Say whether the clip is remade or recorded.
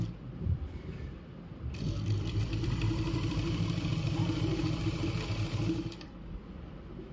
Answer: remade